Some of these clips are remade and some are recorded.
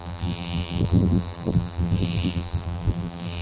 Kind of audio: remade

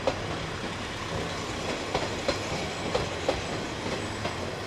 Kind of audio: recorded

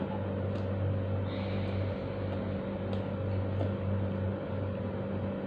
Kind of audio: recorded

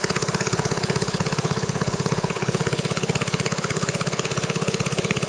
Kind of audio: remade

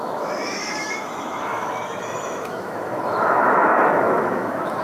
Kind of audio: remade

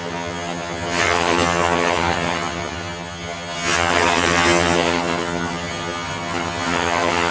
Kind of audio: remade